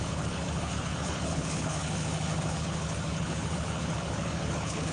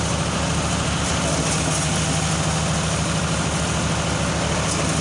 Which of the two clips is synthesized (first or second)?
first